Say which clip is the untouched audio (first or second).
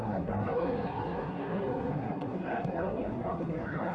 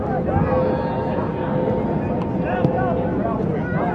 second